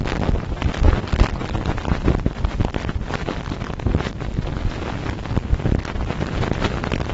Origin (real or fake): real